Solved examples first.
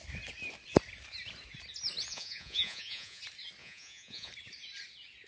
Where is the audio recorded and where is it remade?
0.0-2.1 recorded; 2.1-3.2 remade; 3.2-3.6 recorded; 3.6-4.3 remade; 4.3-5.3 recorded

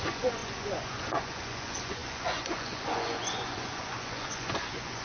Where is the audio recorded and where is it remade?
0.0-5.0 remade